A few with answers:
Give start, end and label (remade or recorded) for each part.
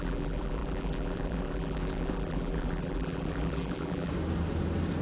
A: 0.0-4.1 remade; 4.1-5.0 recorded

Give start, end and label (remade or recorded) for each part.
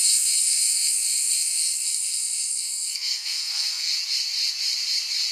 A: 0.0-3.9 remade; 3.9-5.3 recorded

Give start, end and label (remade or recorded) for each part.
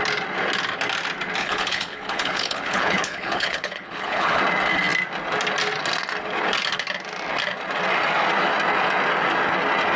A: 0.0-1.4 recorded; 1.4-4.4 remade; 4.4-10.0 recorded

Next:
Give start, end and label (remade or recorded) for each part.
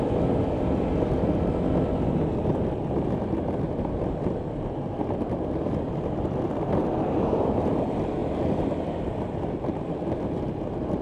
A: 0.0-5.0 recorded; 5.0-5.7 remade; 5.7-8.2 recorded; 8.2-9.5 remade; 9.5-11.0 recorded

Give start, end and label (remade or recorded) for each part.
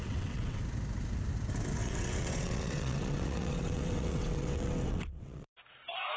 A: 0.0-0.6 remade; 0.6-1.8 recorded; 1.8-5.5 remade; 5.5-6.2 recorded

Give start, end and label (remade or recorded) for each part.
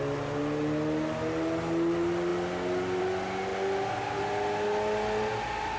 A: 0.0-5.8 recorded